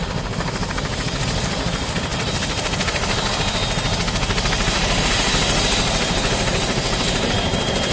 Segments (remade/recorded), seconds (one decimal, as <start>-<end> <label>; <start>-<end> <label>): 0.0-7.9 remade